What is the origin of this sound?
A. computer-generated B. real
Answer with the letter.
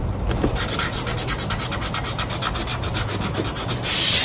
B